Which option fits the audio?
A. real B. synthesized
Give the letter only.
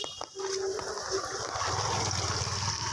A